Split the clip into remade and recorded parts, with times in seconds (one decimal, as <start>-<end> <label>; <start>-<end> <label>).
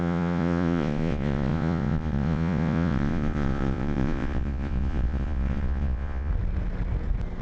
0.0-6.3 remade; 6.3-7.4 recorded